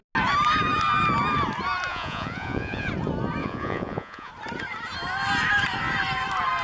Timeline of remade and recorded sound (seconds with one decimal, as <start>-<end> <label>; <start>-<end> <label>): 0.0-1.9 recorded; 1.9-2.9 remade; 2.9-3.4 recorded; 3.4-4.3 remade; 4.3-6.6 recorded